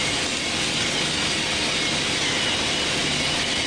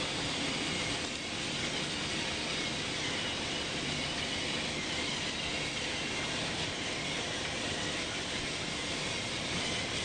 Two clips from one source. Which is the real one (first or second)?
first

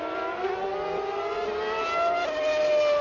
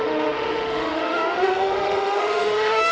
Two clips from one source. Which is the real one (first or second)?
first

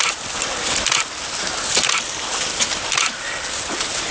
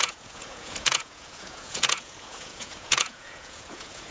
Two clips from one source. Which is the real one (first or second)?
first